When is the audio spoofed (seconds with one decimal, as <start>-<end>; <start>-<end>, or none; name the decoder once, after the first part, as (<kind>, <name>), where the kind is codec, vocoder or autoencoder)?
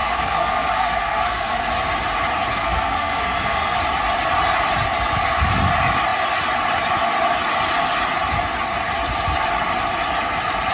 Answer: 0.0-1.7 (codec, SNAC); 2.5-3.8